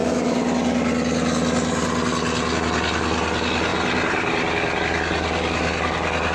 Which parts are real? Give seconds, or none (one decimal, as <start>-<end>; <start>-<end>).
0.0-6.3